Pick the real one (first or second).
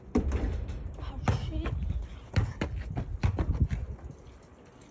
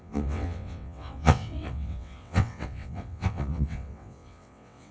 first